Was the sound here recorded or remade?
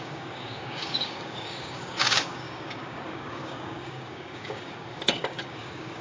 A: remade